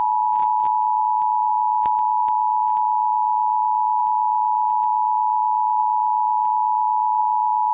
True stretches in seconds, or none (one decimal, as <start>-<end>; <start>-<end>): 0.0-7.7